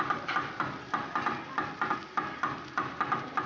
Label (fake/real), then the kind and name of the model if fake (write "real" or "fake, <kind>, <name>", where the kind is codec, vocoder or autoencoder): real